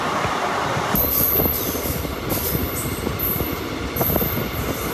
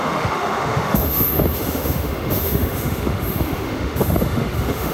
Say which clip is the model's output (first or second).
second